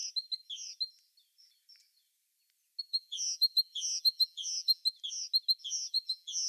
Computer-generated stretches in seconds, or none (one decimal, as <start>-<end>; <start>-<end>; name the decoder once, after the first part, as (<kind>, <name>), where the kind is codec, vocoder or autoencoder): 2.8-4.8 (vocoder, BigVGAN v2); 5.6-6.5